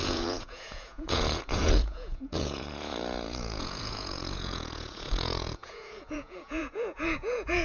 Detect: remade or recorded remade